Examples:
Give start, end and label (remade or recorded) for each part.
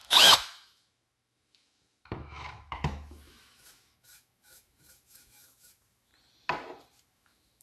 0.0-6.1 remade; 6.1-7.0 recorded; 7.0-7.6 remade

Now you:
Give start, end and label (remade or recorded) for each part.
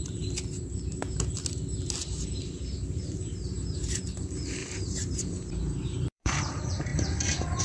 0.0-2.0 recorded; 2.0-4.0 remade; 4.0-4.6 recorded; 4.6-6.5 remade; 6.5-7.6 recorded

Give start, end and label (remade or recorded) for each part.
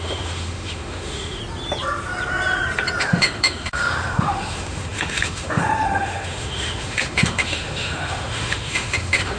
0.0-1.4 remade; 1.4-3.0 recorded; 3.0-9.4 remade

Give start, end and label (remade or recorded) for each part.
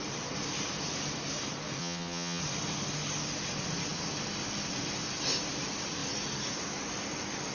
0.0-1.8 recorded; 1.8-2.4 remade; 2.4-7.5 recorded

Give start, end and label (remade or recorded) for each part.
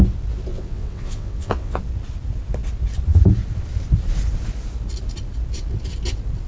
0.0-0.5 recorded; 0.5-1.8 remade; 1.8-6.5 recorded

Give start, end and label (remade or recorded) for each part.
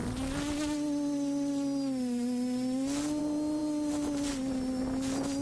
0.0-5.4 recorded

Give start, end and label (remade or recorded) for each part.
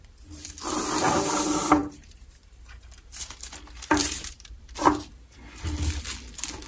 0.0-1.8 recorded; 1.8-3.2 remade; 3.2-4.0 recorded; 4.0-4.5 remade; 4.5-6.7 recorded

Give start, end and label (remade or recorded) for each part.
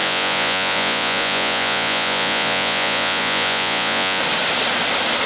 0.0-4.2 remade; 4.2-5.3 recorded